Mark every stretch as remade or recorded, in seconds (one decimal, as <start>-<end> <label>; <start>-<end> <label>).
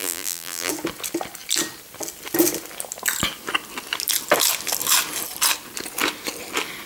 0.0-0.7 remade; 0.7-6.9 recorded